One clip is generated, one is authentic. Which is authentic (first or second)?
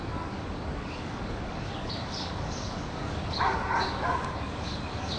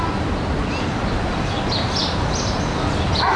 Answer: second